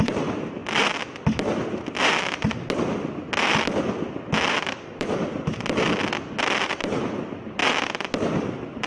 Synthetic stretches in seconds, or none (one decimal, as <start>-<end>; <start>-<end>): 0.0-0.6; 4.5-5.5; 6.7-7.6